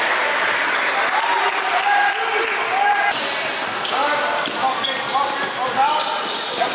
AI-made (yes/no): no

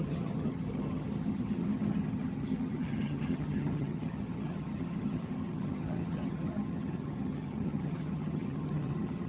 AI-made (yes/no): yes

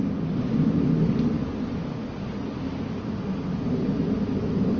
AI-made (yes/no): no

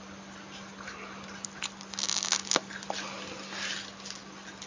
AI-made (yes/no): no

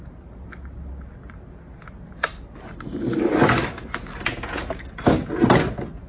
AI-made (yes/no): no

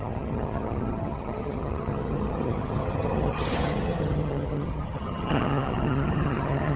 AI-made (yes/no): yes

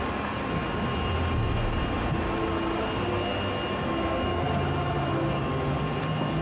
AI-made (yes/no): no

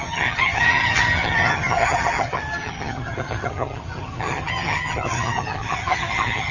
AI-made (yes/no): yes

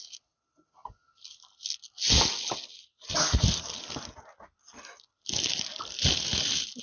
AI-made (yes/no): no